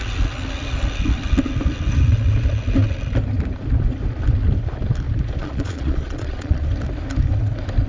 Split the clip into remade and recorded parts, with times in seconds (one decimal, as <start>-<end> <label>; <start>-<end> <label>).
0.0-5.4 recorded; 5.4-6.7 remade; 6.7-7.9 recorded